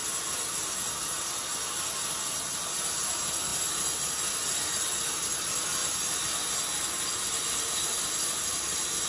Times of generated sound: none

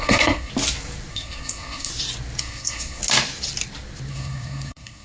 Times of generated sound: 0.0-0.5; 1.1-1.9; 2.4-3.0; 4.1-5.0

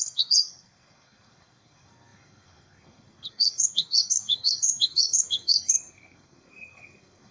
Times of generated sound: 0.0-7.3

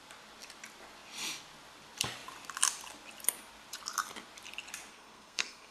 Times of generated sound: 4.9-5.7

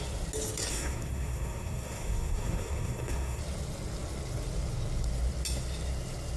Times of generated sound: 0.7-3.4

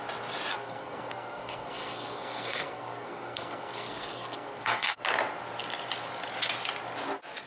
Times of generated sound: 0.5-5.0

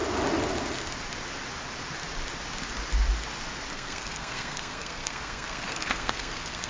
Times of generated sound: 3.7-6.7